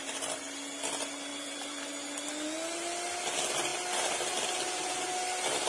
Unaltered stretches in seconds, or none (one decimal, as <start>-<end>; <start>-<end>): 0.0-1.3; 1.8-5.7

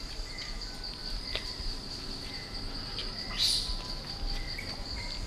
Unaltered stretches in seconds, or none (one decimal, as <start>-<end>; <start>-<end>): 0.0-1.0; 2.3-5.3

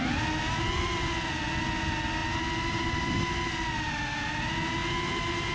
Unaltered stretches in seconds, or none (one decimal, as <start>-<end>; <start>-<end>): 0.0-5.5